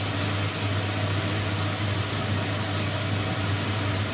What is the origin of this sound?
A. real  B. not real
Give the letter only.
A